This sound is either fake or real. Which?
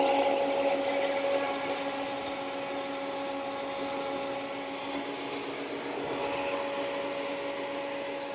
real